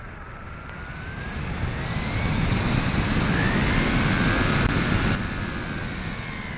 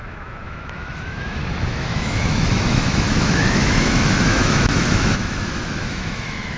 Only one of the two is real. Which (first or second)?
first